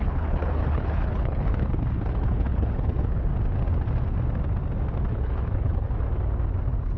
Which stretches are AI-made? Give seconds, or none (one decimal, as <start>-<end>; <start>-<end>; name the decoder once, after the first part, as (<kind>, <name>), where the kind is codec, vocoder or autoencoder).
0.0-3.3 (codec, HILCodec); 5.1-5.9